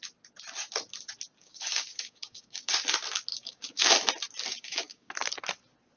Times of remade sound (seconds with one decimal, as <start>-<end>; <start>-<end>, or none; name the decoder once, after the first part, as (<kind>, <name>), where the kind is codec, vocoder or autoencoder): 1.4-2.7 (codec, DAC); 3.3-3.9; 4.5-5.1